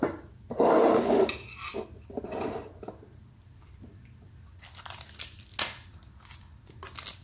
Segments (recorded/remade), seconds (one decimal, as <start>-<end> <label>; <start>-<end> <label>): 0.0-7.2 recorded